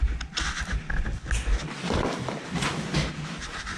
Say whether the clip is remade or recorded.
recorded